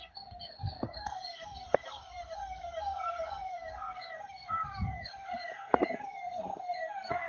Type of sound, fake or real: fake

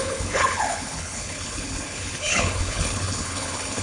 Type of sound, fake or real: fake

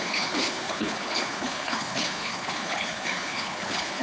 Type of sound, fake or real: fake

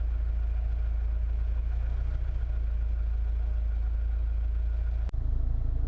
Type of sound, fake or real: real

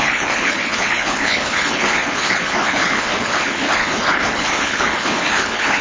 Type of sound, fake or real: fake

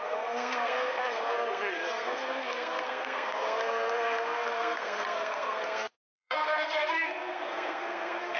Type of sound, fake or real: fake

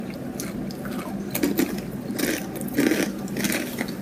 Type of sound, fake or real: real